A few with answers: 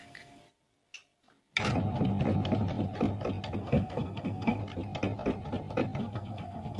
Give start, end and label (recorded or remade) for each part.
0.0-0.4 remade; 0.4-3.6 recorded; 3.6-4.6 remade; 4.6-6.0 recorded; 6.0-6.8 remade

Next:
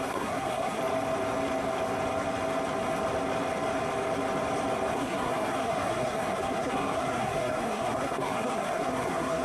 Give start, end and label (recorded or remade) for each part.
0.0-0.8 remade; 0.8-4.9 recorded; 4.9-9.4 remade

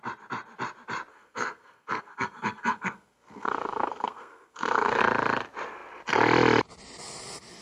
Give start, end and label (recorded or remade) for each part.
0.0-1.1 recorded; 1.1-5.0 remade; 5.0-7.6 recorded

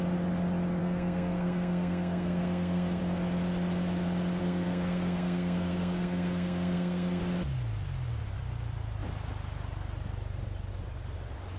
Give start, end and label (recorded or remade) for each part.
0.0-0.8 recorded; 0.8-3.0 remade; 3.0-4.4 recorded; 4.4-7.2 remade; 7.2-11.6 recorded